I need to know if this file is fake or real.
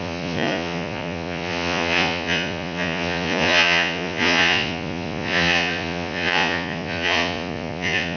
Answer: fake